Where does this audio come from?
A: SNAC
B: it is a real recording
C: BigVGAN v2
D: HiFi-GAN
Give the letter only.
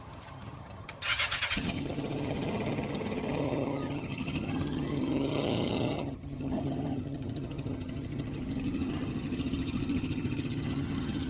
D